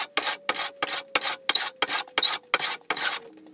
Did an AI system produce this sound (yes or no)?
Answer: no